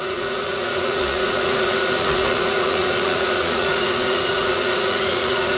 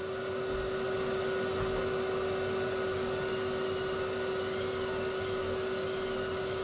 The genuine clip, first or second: second